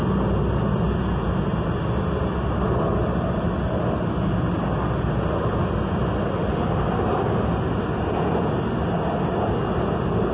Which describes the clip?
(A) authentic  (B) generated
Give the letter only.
A